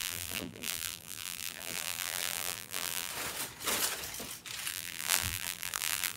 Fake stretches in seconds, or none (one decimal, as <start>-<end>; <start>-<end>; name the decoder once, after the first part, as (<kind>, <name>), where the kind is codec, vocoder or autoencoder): 0.0-3.1 (vocoder, BigVGAN v2); 4.7-6.2